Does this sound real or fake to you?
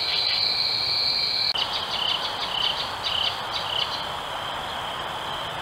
real